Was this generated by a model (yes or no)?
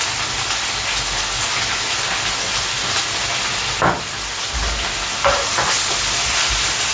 no